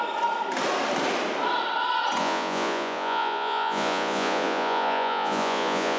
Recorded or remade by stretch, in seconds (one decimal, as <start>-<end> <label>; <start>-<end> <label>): 0.0-2.2 recorded; 2.2-6.0 remade